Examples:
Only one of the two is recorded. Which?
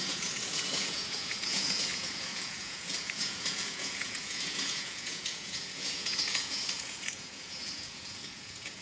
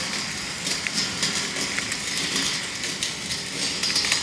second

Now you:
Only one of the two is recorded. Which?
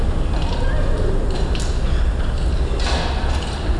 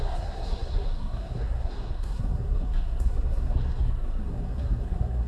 first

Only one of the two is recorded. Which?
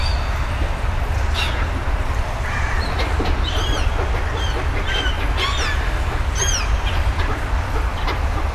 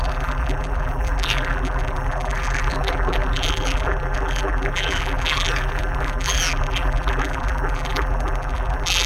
first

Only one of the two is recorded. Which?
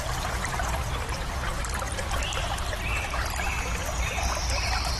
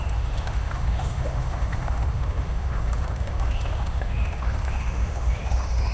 first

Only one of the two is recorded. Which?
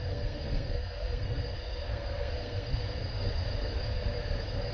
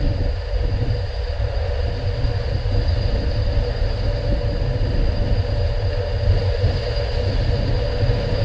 second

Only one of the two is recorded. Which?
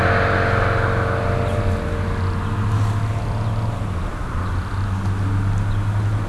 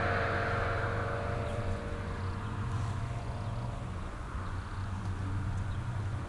first